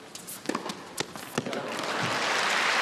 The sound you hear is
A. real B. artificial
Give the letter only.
A